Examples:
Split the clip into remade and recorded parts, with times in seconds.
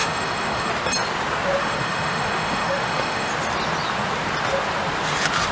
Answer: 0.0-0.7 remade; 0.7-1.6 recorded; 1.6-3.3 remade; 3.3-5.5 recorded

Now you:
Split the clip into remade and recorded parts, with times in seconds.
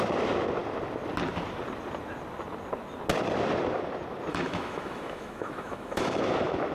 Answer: 0.0-4.3 recorded; 4.3-6.2 remade; 6.2-6.7 recorded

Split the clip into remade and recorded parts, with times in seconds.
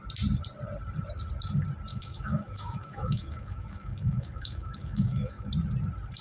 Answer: 0.0-1.9 recorded; 1.9-5.5 remade; 5.5-6.2 recorded